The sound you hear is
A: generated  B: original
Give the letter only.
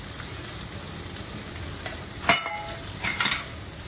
B